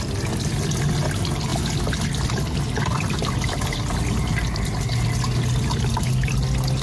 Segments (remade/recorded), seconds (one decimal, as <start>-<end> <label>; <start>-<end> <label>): 0.0-6.8 recorded